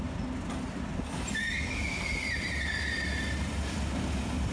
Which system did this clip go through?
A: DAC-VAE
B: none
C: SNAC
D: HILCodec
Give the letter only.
B